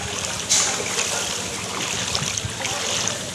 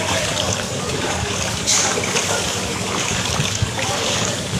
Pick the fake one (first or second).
second